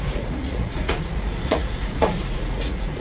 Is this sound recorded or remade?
remade